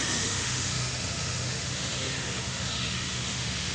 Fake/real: fake